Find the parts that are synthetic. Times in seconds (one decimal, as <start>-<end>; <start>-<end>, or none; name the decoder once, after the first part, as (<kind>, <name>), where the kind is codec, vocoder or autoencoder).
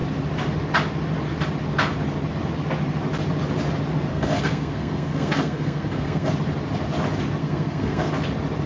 4.1-6.3 (codec, SNAC); 7.4-8.1